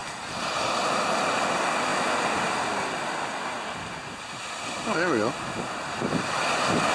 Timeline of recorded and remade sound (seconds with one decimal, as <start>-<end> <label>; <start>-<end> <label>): 0.0-6.9 recorded